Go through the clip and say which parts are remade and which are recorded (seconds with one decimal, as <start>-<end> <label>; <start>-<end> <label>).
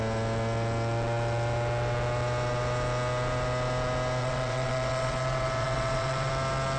0.0-4.2 recorded; 4.2-6.3 remade; 6.3-6.8 recorded